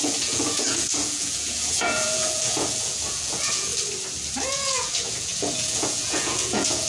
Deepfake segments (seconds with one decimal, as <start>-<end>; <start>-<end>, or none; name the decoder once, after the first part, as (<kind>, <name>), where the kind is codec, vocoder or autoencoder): 0.0-3.7 (vocoder, Vocos); 4.5-6.9